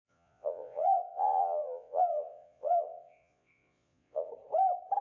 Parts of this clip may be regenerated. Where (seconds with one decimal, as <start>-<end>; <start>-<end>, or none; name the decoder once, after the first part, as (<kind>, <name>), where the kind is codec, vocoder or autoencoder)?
0.0-4.3 (vocoder, Vocos)